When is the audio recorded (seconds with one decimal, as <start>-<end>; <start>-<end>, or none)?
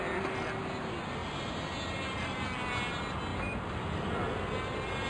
0.0-5.1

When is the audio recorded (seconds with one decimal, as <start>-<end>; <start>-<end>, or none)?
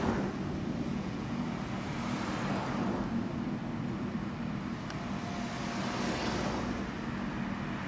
0.0-0.9; 1.4-7.9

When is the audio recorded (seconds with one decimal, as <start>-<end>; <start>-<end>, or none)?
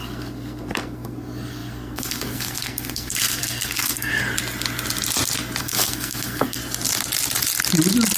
4.1-5.6; 6.6-8.2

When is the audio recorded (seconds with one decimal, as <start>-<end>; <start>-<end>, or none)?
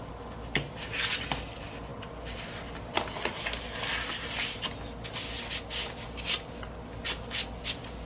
0.0-8.1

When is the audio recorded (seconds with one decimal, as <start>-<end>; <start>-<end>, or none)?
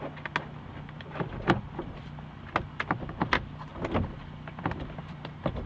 0.0-5.7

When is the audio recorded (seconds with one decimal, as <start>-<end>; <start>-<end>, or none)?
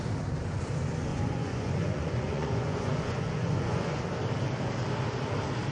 0.0-1.1; 4.0-5.7